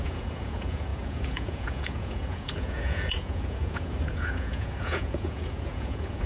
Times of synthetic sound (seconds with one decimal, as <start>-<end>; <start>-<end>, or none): 0.0-6.3